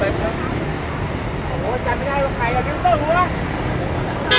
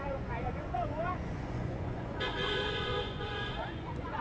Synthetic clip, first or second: second